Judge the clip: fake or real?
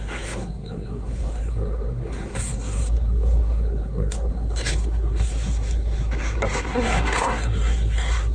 fake